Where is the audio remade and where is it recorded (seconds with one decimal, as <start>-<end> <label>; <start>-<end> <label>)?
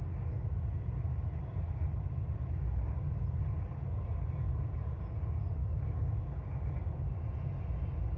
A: 0.0-5.6 recorded; 5.6-6.2 remade; 6.2-8.2 recorded